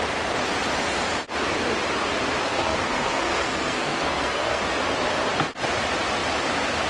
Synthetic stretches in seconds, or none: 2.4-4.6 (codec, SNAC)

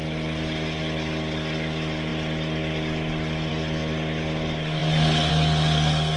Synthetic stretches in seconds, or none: none

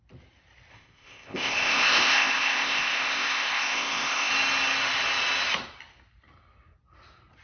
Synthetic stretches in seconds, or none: 0.7-4.3 (codec, ZipCodec)

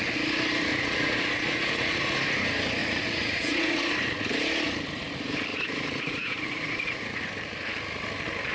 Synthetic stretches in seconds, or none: 0.7-2.0 (vocoder, Vocos); 2.8-3.9; 5.5-7.3

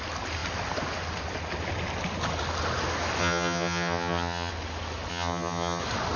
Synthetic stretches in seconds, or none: 3.2-4.5 (vocoder, HiFi-GAN); 5.1-5.8